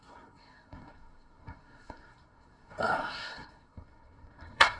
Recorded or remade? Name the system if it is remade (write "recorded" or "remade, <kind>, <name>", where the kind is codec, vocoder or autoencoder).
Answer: remade, codec, SNAC